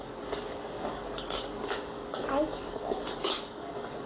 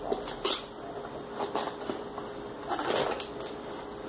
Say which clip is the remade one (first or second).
first